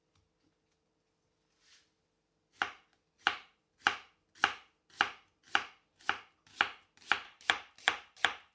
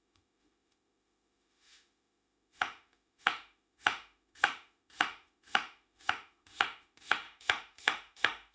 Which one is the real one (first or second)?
first